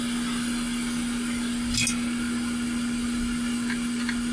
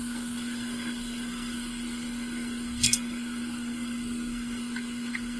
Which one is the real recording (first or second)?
first